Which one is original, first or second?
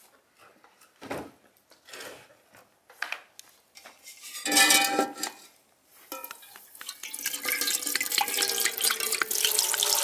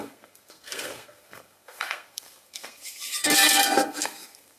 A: first